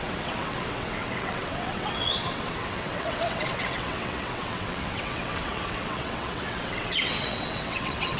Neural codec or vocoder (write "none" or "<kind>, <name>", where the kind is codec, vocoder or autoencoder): vocoder, WaveNeXt